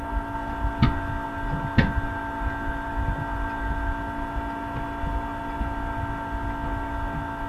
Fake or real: real